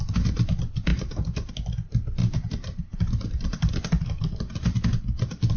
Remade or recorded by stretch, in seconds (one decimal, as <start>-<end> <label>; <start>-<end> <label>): 0.0-0.9 recorded; 0.9-1.5 remade; 1.5-2.2 recorded; 2.2-3.7 remade; 3.7-5.6 recorded